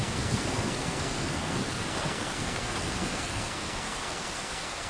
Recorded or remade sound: remade